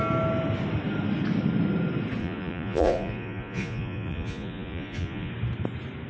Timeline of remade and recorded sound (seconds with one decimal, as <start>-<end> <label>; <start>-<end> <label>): 0.0-2.2 recorded; 2.2-5.3 remade; 5.3-6.1 recorded